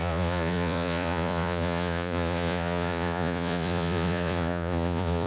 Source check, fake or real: fake